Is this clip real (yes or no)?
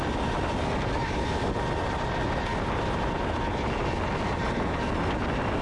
yes